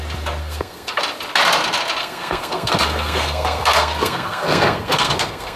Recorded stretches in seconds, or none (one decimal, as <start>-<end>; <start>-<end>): 0.0-0.4; 1.0-2.0